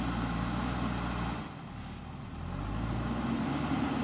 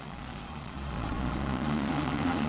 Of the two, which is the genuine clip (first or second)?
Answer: first